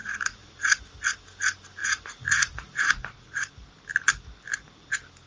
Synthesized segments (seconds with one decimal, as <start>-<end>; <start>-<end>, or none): 0.0-0.8; 1.8-3.5